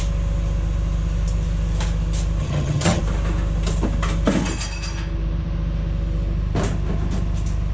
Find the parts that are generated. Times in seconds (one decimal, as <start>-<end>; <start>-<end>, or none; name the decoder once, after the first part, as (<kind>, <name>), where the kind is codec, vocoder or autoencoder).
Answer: 2.4-3.0 (vocoder, HiFi-GAN)